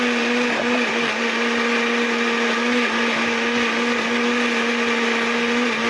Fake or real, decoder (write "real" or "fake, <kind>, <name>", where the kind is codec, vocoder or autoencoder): real